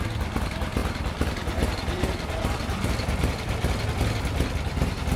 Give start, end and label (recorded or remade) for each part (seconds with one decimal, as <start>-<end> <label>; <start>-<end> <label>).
0.0-0.8 recorded; 0.8-3.9 remade; 3.9-5.2 recorded